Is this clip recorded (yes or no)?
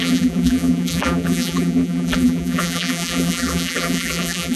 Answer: no